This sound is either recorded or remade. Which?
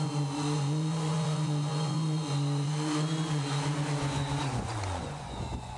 remade